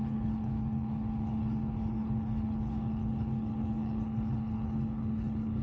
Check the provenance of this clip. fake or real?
fake